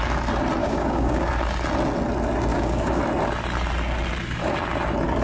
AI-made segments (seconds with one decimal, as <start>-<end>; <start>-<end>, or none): 0.6-1.3; 2.5-3.0